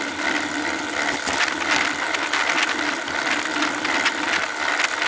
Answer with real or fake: real